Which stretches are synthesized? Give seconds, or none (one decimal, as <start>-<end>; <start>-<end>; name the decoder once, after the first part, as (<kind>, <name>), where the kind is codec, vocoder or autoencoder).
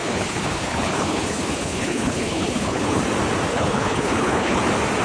0.0-3.0 (codec, HILCodec); 3.5-4.6